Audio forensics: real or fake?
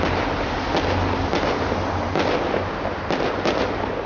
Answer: real